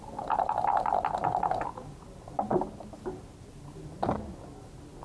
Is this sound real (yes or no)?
yes